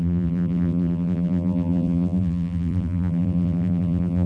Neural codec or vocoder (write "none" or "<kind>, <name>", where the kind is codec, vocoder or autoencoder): vocoder, BigVGAN v2